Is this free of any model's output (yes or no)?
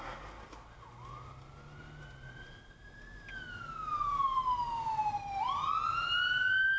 yes